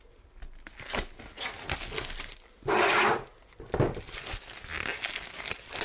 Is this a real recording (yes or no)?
yes